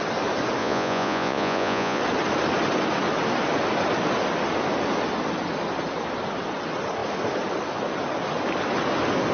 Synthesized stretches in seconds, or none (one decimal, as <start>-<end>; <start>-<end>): 0.6-2.0